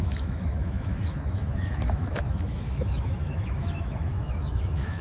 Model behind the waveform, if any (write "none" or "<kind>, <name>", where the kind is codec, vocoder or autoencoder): autoencoder, DAC-VAE